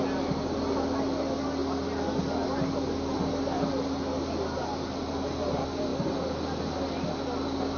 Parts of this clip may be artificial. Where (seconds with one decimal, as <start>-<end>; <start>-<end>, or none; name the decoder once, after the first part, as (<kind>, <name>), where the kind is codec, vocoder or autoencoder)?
none